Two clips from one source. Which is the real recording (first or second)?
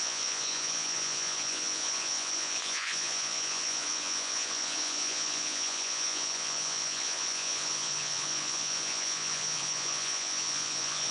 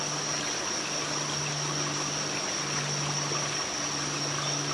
second